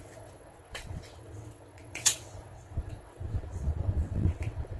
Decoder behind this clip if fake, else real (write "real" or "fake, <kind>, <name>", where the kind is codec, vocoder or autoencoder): fake, vocoder, WaveNeXt